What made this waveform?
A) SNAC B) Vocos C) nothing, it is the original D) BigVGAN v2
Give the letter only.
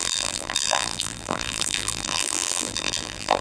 D